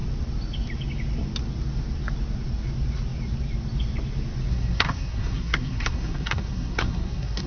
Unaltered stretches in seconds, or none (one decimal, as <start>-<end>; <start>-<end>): 0.0-4.5